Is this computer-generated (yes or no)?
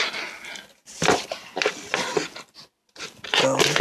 no